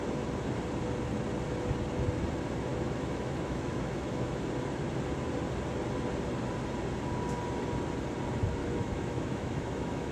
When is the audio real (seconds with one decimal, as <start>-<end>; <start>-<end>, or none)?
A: 0.0-2.7; 4.4-8.6